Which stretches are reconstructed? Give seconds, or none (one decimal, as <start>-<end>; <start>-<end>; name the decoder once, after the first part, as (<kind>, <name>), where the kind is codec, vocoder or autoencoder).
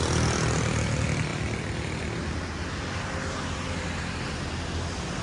none